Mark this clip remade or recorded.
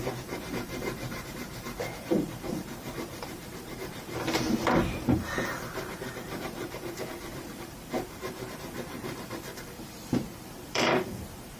remade